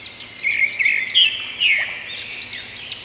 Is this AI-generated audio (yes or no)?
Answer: no